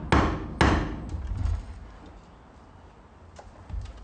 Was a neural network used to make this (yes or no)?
no